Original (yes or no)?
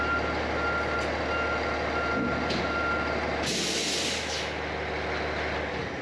yes